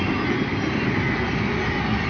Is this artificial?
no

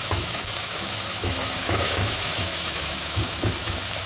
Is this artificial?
yes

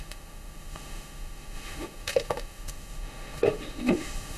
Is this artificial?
yes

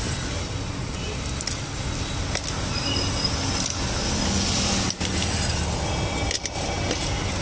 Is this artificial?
no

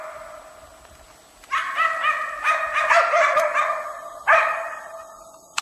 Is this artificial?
no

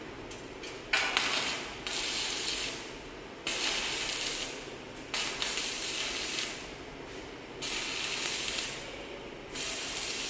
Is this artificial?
no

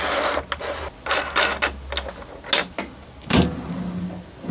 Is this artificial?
no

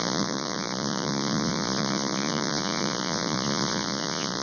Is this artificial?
yes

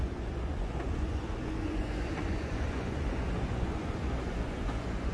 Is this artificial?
yes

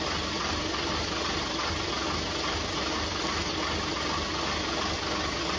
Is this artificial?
no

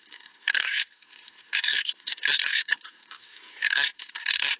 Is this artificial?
yes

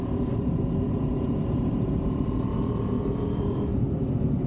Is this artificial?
no